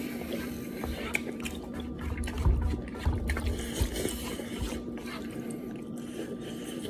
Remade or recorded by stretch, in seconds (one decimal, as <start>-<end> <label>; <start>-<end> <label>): 0.0-6.9 remade